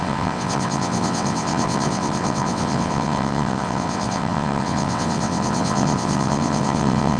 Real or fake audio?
fake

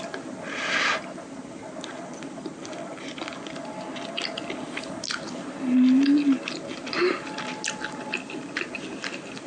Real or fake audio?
real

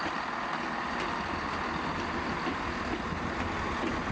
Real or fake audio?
real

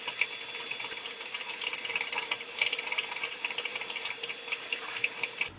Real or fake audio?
real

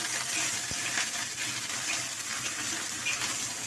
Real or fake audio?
real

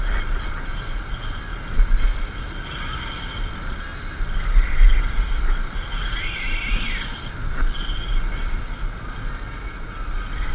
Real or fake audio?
real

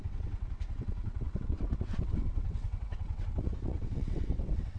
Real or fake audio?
fake